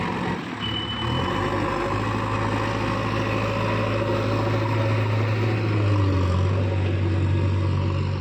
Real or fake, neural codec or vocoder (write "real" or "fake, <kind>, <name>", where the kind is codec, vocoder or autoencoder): real